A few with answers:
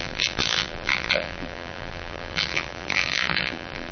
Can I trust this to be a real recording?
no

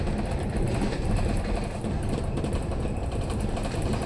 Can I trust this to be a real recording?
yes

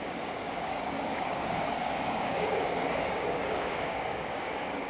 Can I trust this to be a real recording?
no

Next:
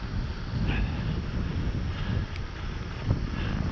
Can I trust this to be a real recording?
yes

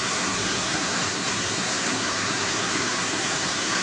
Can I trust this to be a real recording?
no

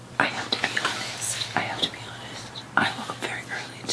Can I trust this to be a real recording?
yes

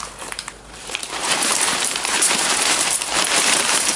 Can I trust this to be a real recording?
no